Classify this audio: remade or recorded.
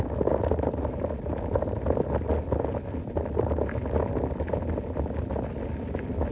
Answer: recorded